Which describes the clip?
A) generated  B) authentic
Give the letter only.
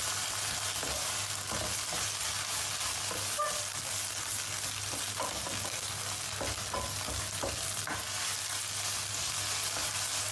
B